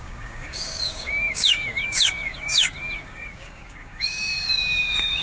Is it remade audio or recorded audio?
remade